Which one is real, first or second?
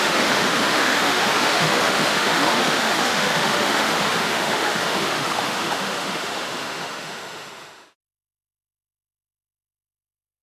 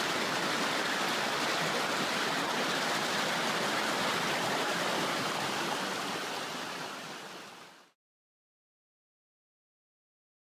second